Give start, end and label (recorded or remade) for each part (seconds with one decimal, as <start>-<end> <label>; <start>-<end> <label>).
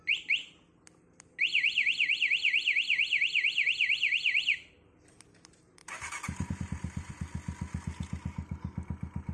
0.0-5.8 recorded; 5.8-7.1 remade; 7.1-9.3 recorded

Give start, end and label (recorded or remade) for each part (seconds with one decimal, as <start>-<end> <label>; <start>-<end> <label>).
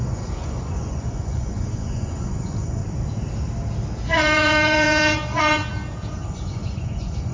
0.0-2.8 remade; 2.8-4.1 recorded; 4.1-5.6 remade; 5.6-6.1 recorded; 6.1-7.3 remade